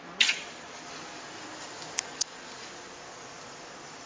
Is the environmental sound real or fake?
real